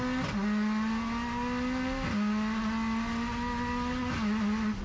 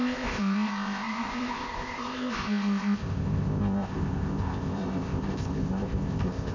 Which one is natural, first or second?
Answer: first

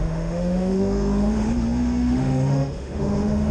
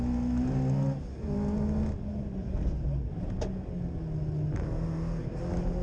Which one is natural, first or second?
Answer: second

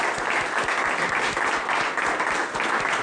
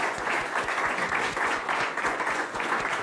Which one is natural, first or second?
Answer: first